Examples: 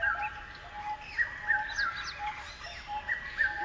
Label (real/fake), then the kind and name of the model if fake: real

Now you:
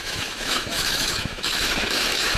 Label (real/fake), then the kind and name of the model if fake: fake, autoencoder, DAC-VAE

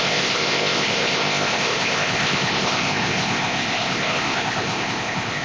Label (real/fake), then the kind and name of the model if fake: fake, codec, ZipCodec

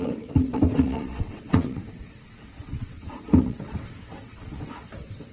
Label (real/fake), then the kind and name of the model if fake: fake, vocoder, WaveNeXt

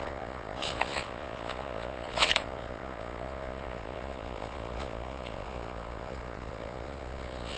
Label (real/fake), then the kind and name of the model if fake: fake, vocoder, Vocos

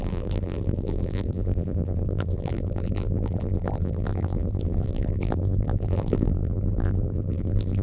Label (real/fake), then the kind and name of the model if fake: fake, vocoder, BigVGAN v2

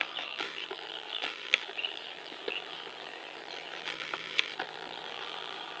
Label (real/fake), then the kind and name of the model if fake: fake, vocoder, BigVGAN v2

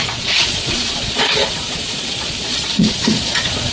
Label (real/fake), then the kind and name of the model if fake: fake, vocoder, Vocos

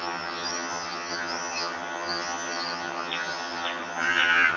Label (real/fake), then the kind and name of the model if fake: fake, vocoder, HiFi-GAN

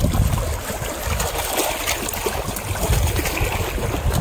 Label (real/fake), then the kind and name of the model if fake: real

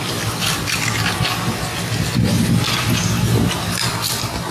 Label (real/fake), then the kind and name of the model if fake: real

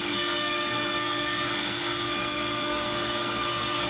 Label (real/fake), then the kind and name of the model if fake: fake, codec, SNAC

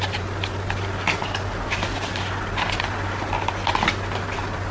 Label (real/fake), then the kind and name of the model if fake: real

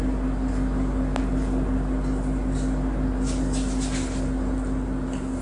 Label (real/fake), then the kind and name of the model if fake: real